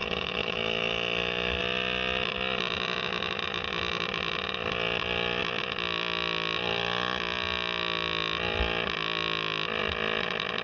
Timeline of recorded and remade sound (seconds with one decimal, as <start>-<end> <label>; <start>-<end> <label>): 0.0-1.6 remade; 1.6-10.6 recorded